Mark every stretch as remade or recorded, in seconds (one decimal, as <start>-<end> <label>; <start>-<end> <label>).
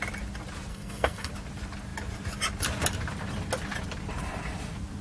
0.0-0.7 recorded; 0.7-1.3 remade; 1.3-5.0 recorded